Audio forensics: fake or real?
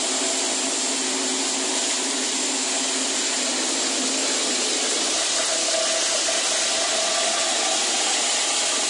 real